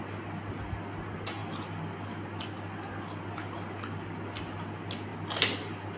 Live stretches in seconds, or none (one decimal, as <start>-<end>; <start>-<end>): 0.0-6.0